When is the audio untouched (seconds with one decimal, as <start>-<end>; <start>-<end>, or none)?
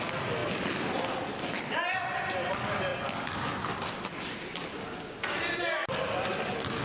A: 0.0-6.8